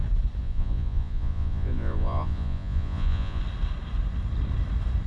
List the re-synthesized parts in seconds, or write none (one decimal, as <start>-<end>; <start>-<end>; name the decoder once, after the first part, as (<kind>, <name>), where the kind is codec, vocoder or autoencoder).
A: 0.4-3.4 (vocoder, Vocos)